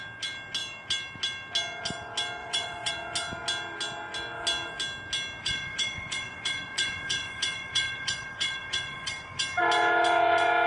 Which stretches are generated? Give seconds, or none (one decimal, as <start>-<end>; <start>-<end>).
2.4-2.9; 5.4-9.4